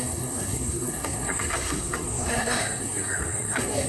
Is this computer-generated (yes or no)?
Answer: yes